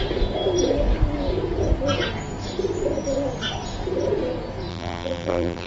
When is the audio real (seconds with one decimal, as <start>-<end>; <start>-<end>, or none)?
0.0-4.7